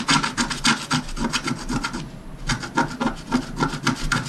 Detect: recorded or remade recorded